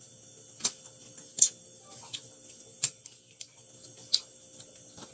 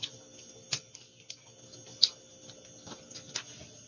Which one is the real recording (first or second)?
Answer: second